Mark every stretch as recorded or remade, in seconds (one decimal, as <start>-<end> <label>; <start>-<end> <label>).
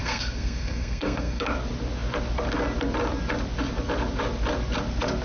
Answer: 0.0-1.4 remade; 1.4-5.2 recorded